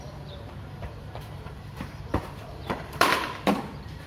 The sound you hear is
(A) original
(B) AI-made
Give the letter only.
B